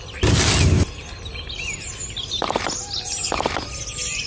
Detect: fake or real real